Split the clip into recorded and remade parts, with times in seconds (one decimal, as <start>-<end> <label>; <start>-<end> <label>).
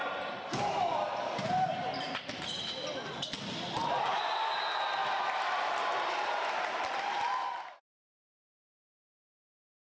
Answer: 0.0-2.2 remade; 2.2-3.8 recorded; 3.8-4.4 remade; 4.4-5.0 recorded; 5.0-6.3 remade; 6.3-10.0 recorded